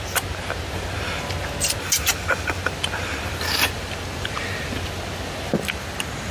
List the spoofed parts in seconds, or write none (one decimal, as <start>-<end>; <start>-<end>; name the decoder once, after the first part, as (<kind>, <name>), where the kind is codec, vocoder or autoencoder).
2.1-6.3 (vocoder, BigVGAN v2)